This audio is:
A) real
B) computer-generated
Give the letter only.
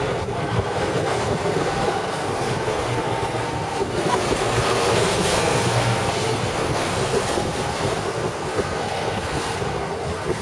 B